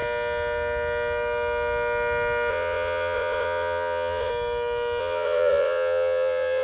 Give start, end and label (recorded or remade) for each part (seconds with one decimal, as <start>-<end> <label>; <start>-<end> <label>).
0.0-2.5 recorded; 2.5-4.3 remade; 4.3-5.0 recorded; 5.0-6.6 remade